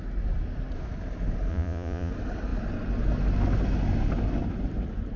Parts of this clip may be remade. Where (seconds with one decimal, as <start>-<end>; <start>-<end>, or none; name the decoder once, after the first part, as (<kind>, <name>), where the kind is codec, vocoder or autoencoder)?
1.5-2.1 (vocoder, Vocos)